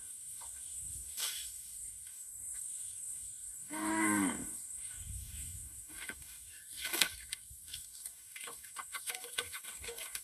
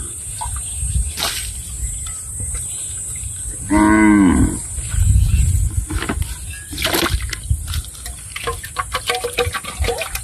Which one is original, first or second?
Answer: second